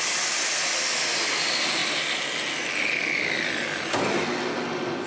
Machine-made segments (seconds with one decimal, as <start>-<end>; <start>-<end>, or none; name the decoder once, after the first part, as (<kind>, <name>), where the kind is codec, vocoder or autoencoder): none

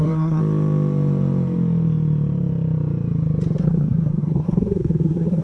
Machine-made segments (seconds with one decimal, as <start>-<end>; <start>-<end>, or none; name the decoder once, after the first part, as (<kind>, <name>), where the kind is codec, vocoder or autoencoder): 0.0-0.4 (codec, SNAC); 3.6-5.4